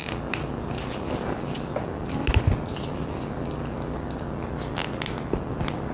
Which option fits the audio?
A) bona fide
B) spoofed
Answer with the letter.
A